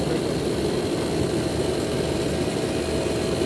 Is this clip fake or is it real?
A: real